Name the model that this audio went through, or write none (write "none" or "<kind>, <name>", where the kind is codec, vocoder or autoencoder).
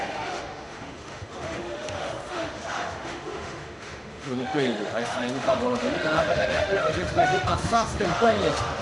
autoencoder, DAC-VAE